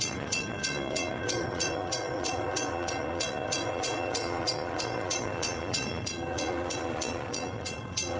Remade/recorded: remade